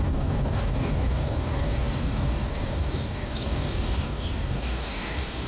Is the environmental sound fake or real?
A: fake